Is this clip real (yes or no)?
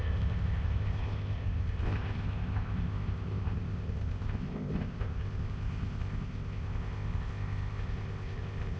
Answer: no